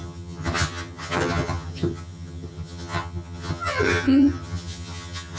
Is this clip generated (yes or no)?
yes